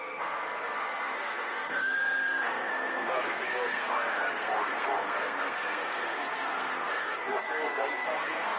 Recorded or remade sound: remade